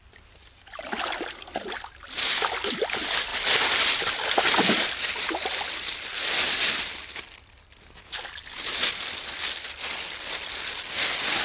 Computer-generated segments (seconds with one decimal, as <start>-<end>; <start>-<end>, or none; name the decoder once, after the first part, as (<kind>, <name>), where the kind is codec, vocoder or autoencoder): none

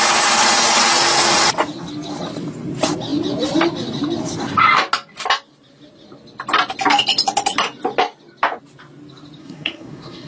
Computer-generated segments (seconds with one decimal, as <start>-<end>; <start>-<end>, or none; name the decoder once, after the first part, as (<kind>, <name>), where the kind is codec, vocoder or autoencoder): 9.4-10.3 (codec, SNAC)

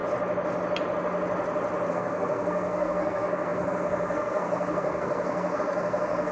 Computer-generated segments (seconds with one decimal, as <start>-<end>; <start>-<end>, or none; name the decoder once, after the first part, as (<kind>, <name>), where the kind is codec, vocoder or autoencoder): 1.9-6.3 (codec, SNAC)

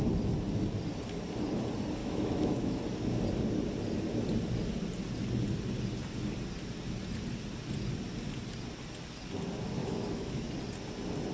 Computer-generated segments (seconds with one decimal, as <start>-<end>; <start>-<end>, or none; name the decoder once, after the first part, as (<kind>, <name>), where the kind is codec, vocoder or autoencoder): 2.0-2.8 (autoencoder, DAC-VAE); 9.8-10.5

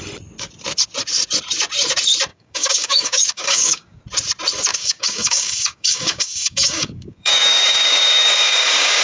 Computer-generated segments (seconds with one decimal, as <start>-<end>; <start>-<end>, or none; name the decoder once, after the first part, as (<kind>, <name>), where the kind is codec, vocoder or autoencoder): 2.3-4.0 (codec, DAC); 4.7-9.0

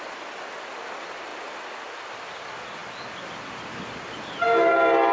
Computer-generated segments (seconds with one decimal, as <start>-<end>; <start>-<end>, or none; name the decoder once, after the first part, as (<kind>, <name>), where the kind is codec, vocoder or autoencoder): none

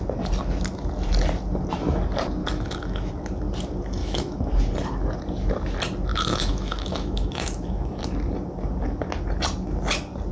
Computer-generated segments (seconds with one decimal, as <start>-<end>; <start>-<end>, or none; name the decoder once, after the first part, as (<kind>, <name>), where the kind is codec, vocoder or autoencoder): 2.4-3.1 (autoencoder, DAC-VAE); 4.0-4.5; 6.1-8.0